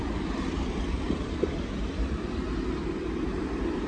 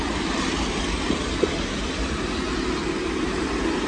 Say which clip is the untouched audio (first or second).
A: second